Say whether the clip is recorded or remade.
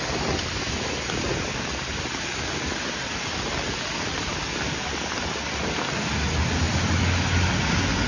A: recorded